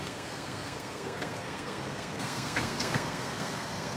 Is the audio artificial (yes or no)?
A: yes